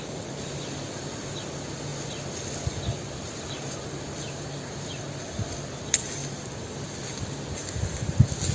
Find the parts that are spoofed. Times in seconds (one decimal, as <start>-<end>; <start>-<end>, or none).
none